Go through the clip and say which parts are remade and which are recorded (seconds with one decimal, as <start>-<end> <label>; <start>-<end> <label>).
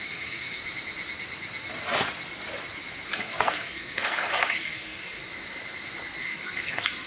0.0-0.6 remade; 0.6-3.1 recorded; 3.1-5.2 remade; 5.2-6.2 recorded; 6.2-7.1 remade